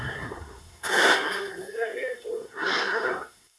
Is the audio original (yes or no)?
no